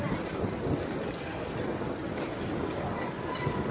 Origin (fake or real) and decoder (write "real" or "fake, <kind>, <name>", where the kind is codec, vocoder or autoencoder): real